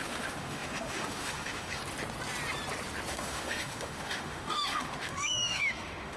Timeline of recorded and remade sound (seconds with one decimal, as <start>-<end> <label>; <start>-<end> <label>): 0.0-1.8 remade; 1.8-3.1 recorded; 3.1-6.2 remade